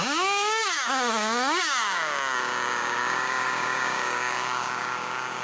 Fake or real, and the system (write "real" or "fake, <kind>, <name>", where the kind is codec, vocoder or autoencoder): fake, codec, DAC